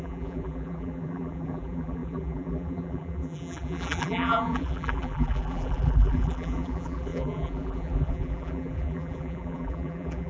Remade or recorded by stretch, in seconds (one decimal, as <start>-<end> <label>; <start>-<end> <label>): 0.0-10.3 remade